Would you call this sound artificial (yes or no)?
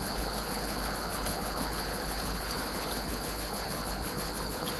yes